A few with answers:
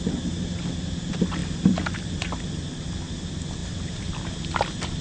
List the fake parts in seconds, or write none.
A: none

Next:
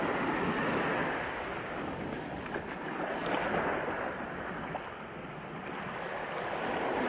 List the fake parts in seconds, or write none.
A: none

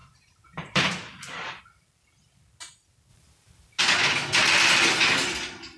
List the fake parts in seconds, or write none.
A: 0.0-1.6 (vocoder, BigVGAN v2); 3.1-3.8

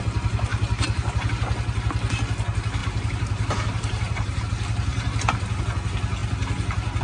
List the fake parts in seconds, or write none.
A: 0.5-1.3 (vocoder, BigVGAN v2); 2.8-4.4; 4.9-5.6

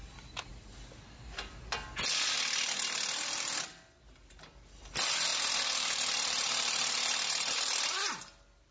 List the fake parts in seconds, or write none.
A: 5.3-8.7 (vocoder, BigVGAN v2)

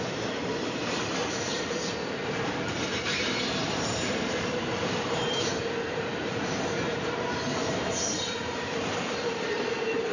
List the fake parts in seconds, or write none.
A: 0.0-10.1 (vocoder, BigVGAN v2)

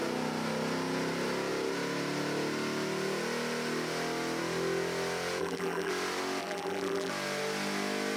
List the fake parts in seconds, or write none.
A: 5.4-5.9 (vocoder, BigVGAN v2); 6.4-7.1